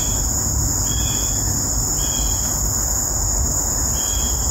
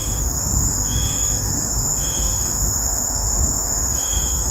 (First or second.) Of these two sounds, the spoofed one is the second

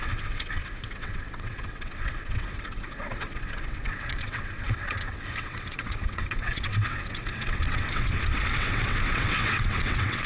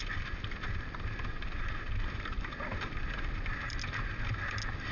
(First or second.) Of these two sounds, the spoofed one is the first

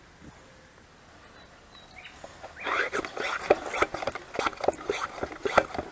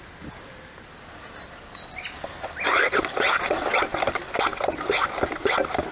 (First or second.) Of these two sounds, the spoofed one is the second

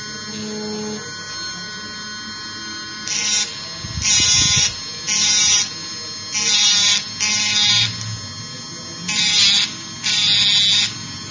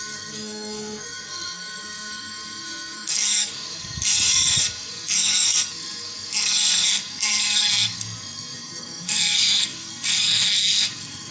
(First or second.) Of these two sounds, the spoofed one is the second